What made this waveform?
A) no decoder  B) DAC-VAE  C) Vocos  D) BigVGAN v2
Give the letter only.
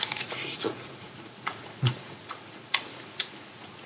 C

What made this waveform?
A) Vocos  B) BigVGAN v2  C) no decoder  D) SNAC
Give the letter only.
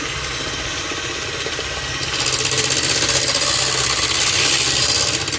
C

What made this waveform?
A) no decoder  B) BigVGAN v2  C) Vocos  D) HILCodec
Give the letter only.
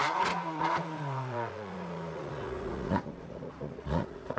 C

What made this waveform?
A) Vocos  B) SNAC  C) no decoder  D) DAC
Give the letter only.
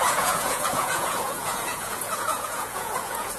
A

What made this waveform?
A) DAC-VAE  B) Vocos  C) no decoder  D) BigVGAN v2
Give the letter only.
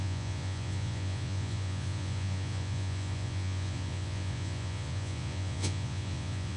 B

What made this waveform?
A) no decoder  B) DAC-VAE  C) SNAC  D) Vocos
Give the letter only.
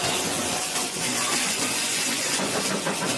D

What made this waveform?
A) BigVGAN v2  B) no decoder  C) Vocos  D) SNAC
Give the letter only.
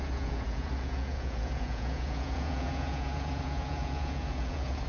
C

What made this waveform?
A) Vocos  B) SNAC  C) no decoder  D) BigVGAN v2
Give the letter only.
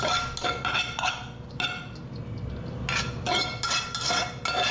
C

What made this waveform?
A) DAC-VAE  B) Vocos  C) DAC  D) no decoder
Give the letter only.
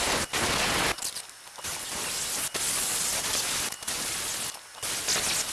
D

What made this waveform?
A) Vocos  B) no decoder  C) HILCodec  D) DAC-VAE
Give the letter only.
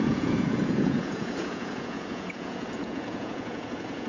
A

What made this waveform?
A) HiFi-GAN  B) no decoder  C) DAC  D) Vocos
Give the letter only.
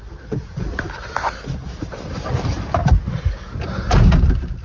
B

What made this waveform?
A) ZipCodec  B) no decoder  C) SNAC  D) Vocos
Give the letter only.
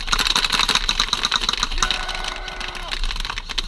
B